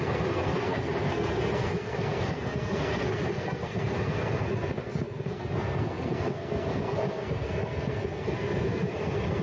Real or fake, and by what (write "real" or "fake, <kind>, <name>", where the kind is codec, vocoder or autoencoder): fake, codec, SNAC